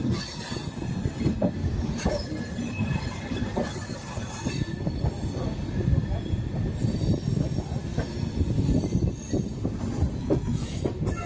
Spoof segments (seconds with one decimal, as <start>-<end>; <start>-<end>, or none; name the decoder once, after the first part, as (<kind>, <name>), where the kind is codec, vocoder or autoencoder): 1.6-2.3 (autoencoder, DAC-VAE); 10.2-10.8